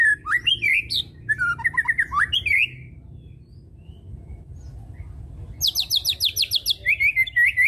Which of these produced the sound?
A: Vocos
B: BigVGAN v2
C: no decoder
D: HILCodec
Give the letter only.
C